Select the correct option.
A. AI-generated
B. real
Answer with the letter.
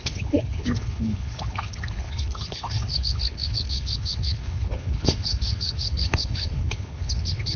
A